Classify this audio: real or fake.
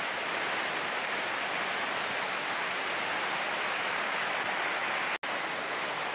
real